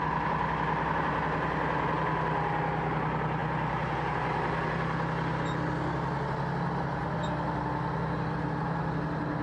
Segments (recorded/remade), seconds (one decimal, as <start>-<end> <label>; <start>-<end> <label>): 0.0-9.4 recorded